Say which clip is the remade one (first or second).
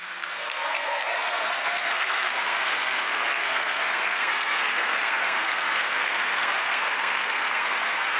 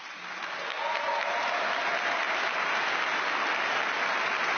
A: first